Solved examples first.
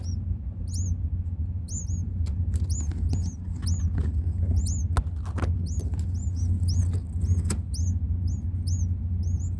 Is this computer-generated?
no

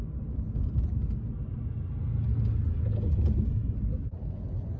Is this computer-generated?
no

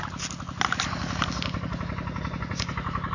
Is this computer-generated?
no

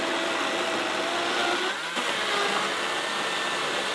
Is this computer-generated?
no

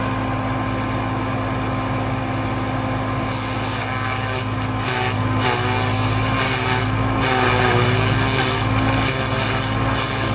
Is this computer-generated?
no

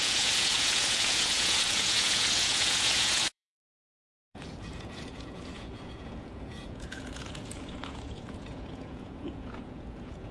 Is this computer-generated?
yes